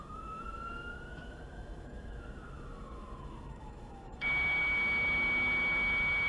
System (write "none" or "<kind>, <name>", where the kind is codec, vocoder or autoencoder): autoencoder, DAC-VAE